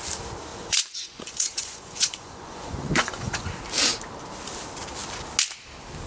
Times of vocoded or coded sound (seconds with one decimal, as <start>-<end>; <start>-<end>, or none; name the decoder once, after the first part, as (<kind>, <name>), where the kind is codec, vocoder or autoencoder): 0.5-3.6 (vocoder, Vocos)